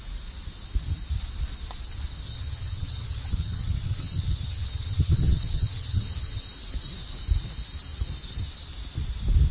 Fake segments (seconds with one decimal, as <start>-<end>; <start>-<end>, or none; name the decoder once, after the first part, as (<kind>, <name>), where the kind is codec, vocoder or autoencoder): 2.3-6.4 (vocoder, HiFi-GAN)